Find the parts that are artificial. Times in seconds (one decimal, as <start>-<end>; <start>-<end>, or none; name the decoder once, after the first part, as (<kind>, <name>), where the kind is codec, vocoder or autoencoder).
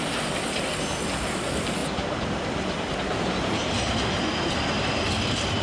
none